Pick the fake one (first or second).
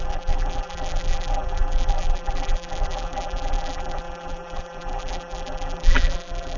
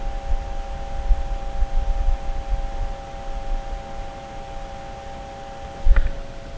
first